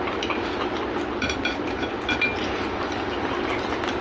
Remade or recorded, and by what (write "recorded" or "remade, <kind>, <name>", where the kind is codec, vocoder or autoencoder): recorded